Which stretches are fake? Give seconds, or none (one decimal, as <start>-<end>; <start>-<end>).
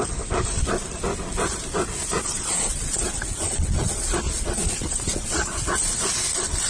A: 2.0-6.0